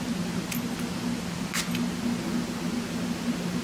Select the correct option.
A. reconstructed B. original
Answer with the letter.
B